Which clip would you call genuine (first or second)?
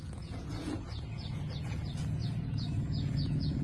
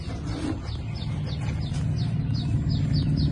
second